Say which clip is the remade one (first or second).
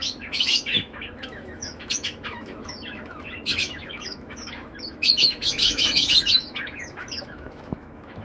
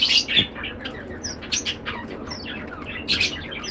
first